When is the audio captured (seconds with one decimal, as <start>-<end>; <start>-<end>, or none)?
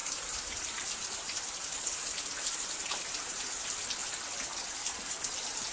3.4-5.7